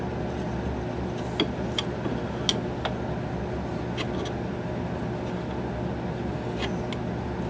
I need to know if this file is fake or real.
real